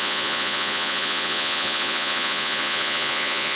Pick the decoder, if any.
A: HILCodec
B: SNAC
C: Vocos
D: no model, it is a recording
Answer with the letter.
C